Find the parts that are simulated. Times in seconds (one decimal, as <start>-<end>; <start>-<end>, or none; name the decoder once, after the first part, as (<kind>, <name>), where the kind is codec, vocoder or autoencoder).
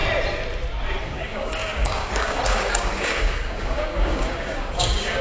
1.0-5.2 (codec, DAC)